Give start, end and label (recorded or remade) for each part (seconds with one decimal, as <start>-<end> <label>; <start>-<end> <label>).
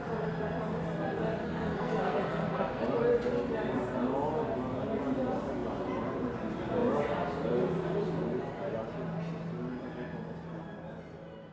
0.0-1.4 recorded; 1.4-2.8 remade; 2.8-11.5 recorded